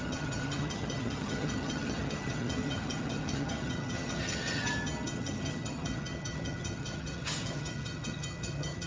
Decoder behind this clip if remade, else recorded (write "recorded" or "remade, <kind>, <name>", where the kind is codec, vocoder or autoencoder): remade, vocoder, HiFi-GAN